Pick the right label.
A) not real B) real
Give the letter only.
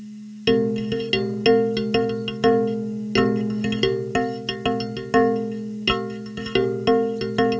B